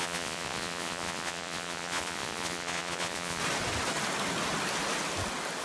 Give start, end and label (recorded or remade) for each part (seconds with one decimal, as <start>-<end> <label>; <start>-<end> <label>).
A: 0.0-3.4 remade; 3.4-5.6 recorded